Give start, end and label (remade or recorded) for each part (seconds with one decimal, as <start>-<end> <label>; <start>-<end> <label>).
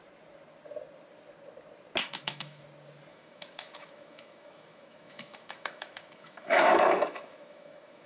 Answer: 0.0-2.0 recorded; 2.0-2.6 remade; 2.6-3.1 recorded; 3.1-8.1 remade